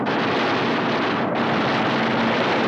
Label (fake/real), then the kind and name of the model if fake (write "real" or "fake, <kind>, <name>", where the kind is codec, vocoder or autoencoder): real